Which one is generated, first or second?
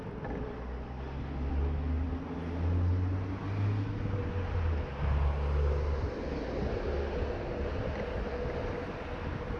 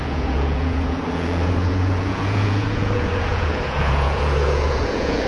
second